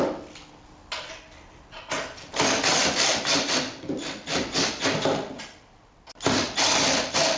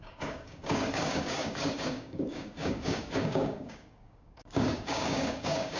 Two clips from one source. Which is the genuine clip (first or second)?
first